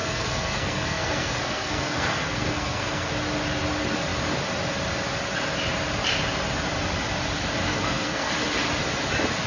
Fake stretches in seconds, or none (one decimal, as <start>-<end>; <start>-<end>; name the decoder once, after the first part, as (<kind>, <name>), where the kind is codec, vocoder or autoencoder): 0.0-3.1 (codec, SNAC); 7.6-8.3